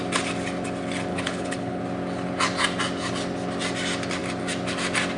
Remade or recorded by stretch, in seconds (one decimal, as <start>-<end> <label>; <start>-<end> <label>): 0.0-1.1 recorded; 1.1-1.8 remade; 1.8-5.2 recorded